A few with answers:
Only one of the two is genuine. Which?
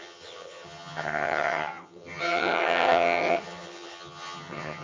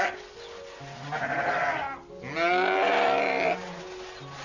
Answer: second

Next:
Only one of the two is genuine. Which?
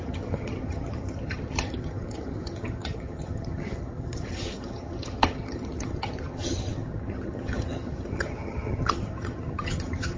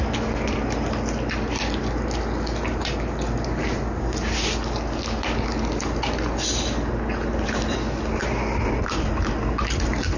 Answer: second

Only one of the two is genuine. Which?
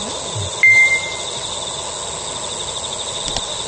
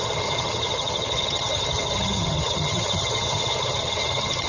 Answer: first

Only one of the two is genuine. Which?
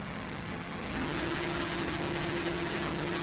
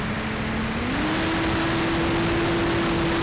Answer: second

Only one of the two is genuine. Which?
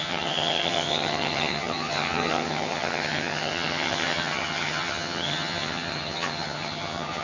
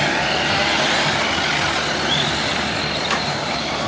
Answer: second